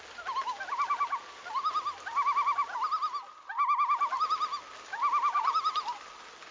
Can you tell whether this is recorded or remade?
recorded